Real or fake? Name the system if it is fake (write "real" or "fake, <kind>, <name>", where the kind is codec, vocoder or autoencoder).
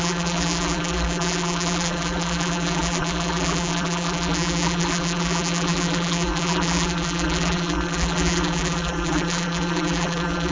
fake, vocoder, BigVGAN v2